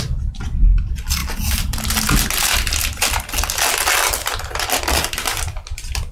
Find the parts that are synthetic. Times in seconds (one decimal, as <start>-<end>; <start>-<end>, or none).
none